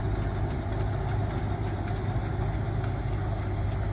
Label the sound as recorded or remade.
recorded